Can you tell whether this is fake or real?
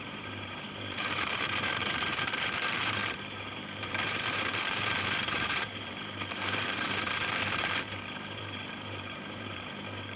fake